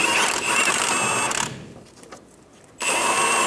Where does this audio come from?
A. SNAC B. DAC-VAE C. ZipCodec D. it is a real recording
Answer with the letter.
D